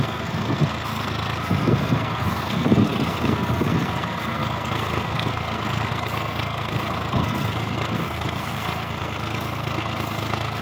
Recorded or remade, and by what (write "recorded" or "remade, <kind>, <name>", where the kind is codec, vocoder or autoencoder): remade, codec, SNAC